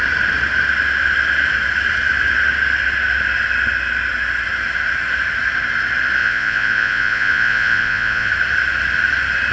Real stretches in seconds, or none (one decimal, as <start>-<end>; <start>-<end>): 0.0-6.2; 8.3-9.5